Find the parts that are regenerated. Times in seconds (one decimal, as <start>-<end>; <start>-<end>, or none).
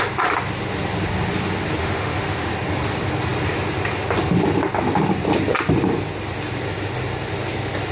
1.8-2.5